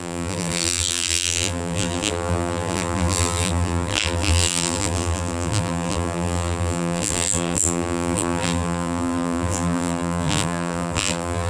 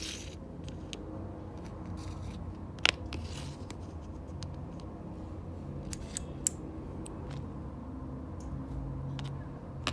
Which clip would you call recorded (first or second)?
second